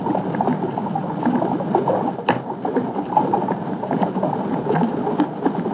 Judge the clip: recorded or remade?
recorded